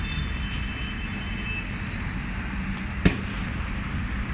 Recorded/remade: recorded